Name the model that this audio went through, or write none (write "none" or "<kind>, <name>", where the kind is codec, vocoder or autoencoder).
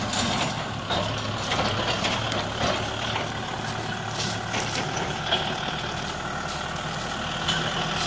none